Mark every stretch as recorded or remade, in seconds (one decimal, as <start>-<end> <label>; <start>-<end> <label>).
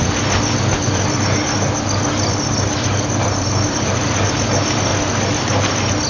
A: 0.0-4.9 remade; 4.9-6.1 recorded